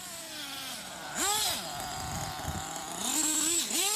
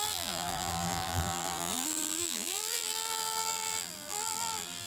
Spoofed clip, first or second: second